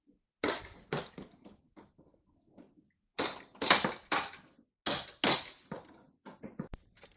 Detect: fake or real real